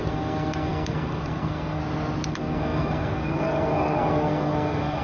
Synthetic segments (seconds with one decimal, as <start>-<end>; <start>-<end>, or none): 0.0-1.8; 2.3-5.0